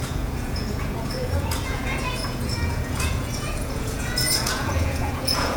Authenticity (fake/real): fake